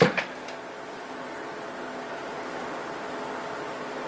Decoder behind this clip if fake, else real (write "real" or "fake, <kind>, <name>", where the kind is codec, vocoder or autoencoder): real